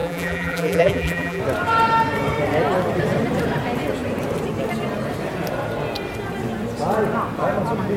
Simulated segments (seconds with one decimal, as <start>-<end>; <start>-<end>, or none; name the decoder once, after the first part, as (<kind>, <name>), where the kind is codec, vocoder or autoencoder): 0.0-1.4 (vocoder, BigVGAN v2)

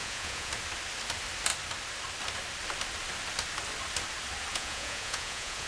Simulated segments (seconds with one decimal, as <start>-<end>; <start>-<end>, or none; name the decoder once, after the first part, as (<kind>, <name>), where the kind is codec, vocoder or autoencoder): 0.0-0.5 (vocoder, Vocos); 4.5-5.7

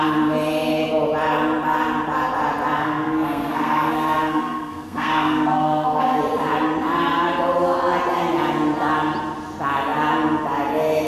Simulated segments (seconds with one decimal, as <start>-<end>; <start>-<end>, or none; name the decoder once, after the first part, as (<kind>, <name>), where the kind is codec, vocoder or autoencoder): 2.8-6.2 (codec, SNAC)

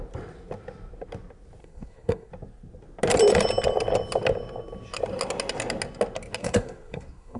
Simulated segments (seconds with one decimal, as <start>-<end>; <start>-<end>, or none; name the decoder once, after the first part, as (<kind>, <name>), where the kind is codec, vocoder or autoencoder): 1.6-2.3 (codec, SNAC); 6.4-7.4

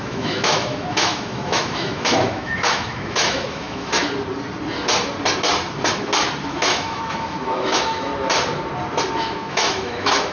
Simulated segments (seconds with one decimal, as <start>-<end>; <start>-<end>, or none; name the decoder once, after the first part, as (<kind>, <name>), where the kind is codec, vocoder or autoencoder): 0.0-4.0 (autoencoder, DAC-VAE); 6.4-8.1; 9.2-10.3

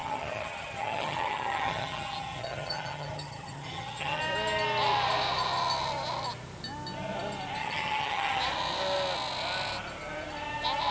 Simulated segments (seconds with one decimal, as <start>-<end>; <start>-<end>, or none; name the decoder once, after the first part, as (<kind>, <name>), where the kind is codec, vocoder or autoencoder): 0.0-4.2 (vocoder, HiFi-GAN); 7.6-8.4

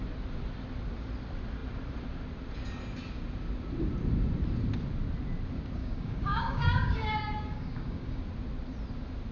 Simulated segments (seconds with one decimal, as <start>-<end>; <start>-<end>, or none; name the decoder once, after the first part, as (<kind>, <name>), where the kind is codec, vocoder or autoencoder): 5.8-8.2 (codec, DAC)